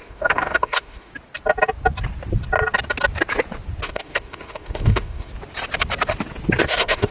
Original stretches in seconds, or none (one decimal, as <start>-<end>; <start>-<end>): 1.1-3.8; 5.3-6.6